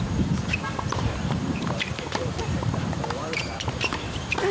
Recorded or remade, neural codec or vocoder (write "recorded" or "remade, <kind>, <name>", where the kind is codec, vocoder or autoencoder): remade, vocoder, BigVGAN v2